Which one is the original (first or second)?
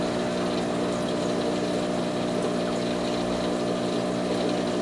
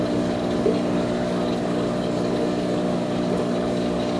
first